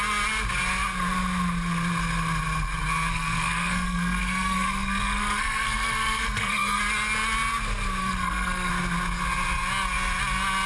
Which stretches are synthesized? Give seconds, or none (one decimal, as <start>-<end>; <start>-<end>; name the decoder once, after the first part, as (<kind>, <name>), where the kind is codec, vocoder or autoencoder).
3.1-6.8 (codec, SNAC); 8.0-8.7